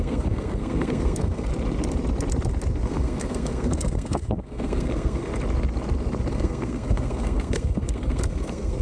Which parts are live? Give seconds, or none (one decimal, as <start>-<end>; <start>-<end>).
1.5-2.8; 5.3-6.3